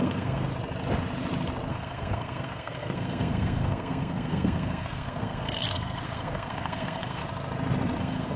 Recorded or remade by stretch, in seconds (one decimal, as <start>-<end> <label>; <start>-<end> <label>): 0.0-0.5 remade; 0.5-1.7 recorded; 1.7-7.2 remade; 7.2-8.0 recorded; 8.0-8.4 remade